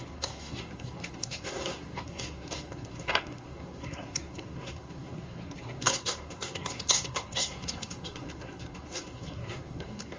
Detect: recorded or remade remade